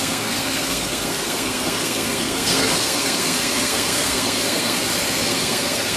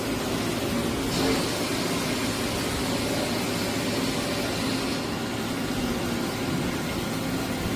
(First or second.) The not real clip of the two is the first